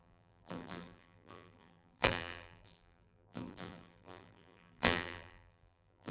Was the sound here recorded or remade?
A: remade